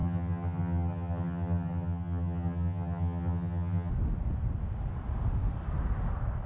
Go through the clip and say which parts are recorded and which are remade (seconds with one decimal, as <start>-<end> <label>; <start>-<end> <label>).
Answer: 0.0-3.9 remade; 3.9-6.5 recorded